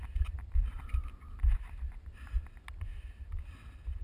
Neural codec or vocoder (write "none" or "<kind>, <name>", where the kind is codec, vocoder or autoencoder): none